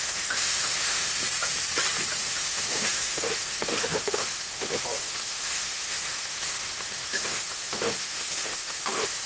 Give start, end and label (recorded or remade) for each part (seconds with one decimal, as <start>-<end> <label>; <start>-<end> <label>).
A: 0.0-1.2 remade; 1.2-2.2 recorded; 2.2-9.3 remade